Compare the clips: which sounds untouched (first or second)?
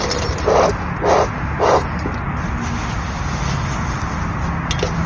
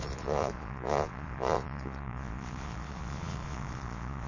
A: first